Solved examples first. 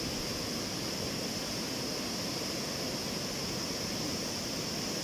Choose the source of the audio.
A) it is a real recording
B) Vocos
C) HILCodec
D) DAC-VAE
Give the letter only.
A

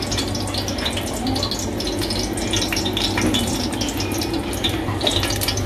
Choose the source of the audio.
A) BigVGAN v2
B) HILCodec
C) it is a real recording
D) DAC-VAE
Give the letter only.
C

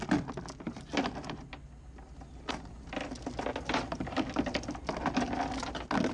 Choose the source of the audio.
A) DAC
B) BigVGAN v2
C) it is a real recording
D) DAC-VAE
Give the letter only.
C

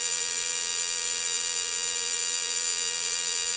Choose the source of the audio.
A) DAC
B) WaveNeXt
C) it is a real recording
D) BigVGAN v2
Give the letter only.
D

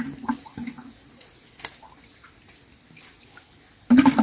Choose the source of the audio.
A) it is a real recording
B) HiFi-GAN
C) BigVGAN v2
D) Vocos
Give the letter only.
A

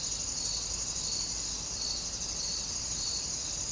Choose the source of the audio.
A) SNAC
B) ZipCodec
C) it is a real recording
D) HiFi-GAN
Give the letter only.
C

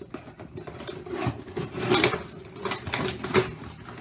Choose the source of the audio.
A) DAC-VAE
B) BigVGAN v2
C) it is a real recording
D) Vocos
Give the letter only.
C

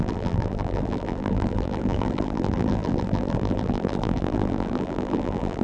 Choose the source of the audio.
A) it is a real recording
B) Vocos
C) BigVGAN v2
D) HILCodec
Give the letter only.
C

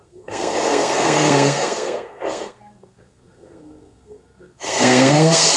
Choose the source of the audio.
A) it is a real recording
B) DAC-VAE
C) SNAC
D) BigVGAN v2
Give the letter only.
C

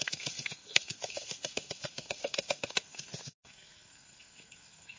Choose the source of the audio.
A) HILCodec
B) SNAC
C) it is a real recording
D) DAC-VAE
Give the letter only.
B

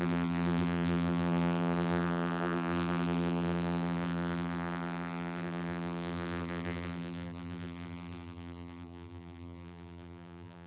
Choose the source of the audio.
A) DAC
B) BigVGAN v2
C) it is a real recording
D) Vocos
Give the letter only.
B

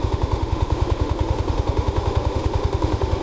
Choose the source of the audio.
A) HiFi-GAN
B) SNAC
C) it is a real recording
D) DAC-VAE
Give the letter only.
D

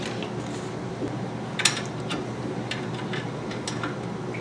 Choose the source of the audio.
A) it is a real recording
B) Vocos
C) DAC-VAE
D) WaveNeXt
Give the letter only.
A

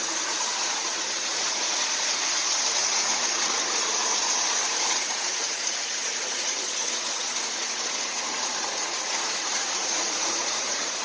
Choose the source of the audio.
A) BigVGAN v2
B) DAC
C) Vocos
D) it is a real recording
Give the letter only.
C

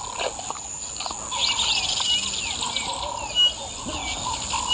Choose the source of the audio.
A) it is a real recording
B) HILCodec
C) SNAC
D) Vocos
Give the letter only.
A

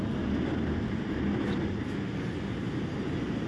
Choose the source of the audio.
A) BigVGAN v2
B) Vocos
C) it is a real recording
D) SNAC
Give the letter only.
C